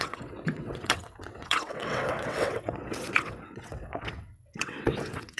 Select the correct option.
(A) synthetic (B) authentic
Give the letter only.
A